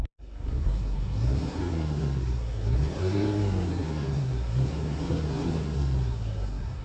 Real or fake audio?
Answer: fake